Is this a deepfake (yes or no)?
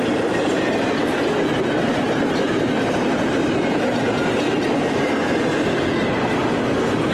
no